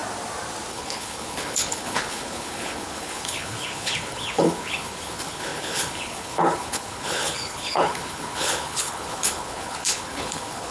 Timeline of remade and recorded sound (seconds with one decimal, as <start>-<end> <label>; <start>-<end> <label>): 0.0-0.7 recorded; 0.7-10.7 remade